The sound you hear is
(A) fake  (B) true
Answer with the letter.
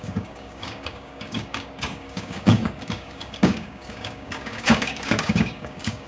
A